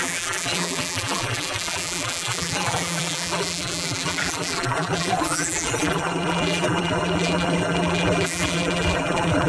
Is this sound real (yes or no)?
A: no